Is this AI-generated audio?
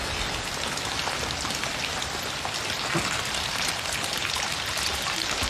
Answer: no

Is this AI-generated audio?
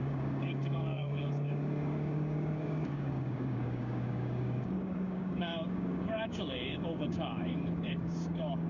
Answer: yes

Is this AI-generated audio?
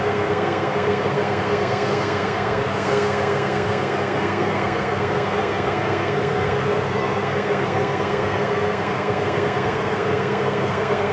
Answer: yes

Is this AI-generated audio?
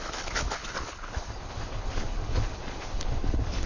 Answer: yes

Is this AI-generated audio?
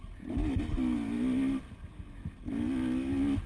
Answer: no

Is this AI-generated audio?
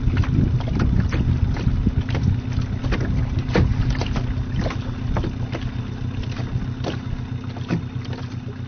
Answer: no